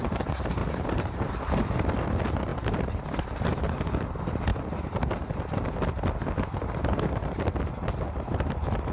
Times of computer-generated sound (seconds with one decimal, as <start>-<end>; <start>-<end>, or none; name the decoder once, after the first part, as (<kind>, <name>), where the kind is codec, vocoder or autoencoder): 0.6-1.3 (vocoder, BigVGAN v2)